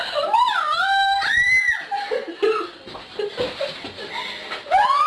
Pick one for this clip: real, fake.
real